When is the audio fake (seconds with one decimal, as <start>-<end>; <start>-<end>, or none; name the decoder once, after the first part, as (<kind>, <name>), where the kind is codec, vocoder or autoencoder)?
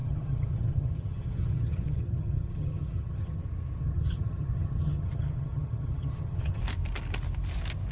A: 0.0-3.4 (vocoder, HiFi-GAN); 3.8-6.6